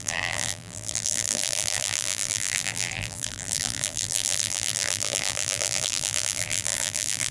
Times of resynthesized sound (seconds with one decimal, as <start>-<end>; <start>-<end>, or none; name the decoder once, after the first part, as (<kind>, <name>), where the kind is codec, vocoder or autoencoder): 0.0-7.3 (vocoder, BigVGAN v2)